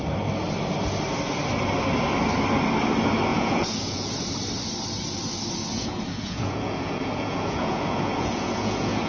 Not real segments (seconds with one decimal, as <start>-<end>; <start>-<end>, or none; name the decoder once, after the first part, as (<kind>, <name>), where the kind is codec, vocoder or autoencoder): 3.3-4.1 (vocoder, Vocos); 5.7-9.1